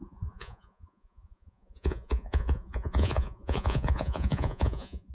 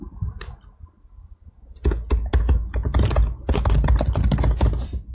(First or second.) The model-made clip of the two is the first